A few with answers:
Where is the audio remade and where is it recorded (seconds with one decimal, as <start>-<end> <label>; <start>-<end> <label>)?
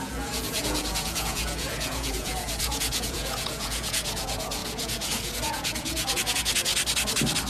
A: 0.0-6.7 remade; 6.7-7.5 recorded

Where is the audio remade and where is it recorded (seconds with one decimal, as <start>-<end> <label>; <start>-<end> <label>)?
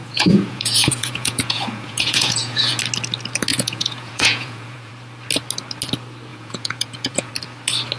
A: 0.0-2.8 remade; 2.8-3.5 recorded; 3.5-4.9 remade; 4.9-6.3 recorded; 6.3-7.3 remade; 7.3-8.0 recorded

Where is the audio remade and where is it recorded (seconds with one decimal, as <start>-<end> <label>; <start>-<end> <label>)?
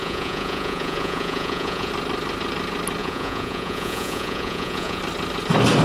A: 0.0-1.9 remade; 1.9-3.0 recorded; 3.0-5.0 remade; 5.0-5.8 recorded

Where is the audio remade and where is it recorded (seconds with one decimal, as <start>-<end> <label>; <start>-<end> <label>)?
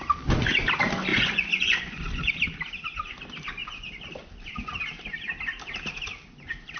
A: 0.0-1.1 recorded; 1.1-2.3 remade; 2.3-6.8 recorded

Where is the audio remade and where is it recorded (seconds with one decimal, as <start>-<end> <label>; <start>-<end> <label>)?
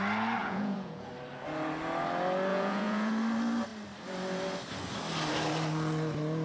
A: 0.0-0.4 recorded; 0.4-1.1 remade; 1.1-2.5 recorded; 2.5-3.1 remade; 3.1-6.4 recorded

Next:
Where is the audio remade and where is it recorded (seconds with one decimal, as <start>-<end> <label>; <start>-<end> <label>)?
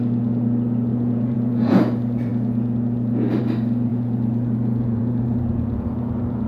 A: 0.0-0.9 recorded; 0.9-1.8 remade; 1.8-3.9 recorded; 3.9-5.9 remade; 5.9-6.5 recorded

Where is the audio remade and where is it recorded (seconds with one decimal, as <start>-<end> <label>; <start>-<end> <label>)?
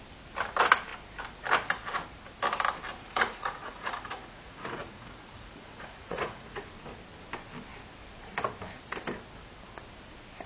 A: 0.0-2.9 recorded; 2.9-6.7 remade; 6.7-10.5 recorded